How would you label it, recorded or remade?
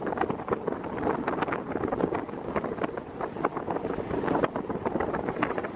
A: recorded